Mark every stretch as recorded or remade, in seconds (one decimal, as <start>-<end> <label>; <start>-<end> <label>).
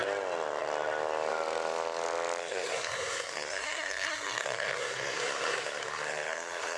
0.0-2.4 recorded; 2.4-6.8 remade